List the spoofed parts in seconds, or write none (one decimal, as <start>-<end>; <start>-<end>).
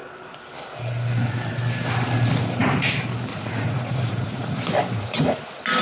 3.3-4.6